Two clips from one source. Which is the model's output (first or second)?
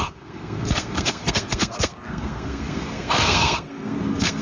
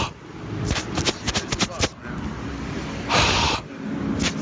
first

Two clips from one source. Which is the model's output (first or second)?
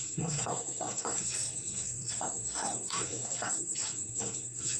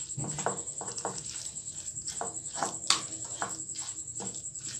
first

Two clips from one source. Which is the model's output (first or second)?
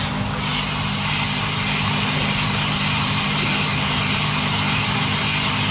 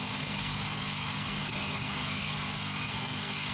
second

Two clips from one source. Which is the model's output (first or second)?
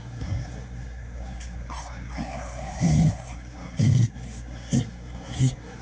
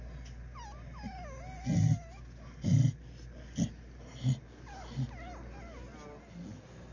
first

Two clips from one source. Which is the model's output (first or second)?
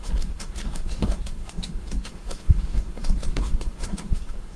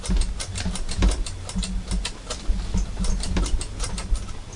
first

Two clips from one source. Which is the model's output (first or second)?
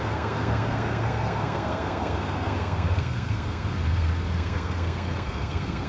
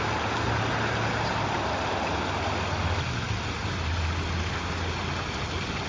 first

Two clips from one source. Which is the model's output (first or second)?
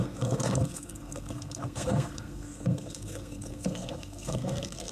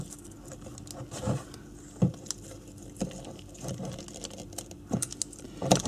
first